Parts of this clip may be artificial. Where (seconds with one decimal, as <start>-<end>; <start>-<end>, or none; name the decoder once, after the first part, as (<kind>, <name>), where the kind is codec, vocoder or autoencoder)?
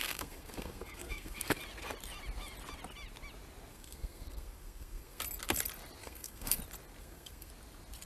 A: 0.0-1.6 (codec, SNAC); 3.7-5.2; 6.0-6.6; 7.0-7.5